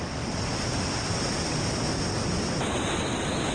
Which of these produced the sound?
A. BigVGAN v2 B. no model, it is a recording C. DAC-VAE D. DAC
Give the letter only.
B